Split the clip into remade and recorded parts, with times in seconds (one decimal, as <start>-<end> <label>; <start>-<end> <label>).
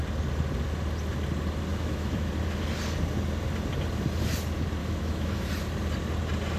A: 0.0-1.7 recorded; 1.7-2.3 remade; 2.3-4.8 recorded; 4.8-5.5 remade; 5.5-6.6 recorded